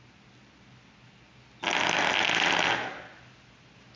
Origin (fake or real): real